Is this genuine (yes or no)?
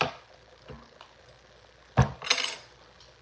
yes